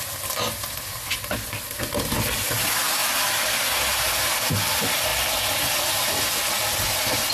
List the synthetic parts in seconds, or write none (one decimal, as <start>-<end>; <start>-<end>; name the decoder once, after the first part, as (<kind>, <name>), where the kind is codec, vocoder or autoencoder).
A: none